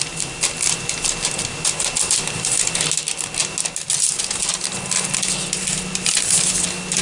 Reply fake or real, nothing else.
real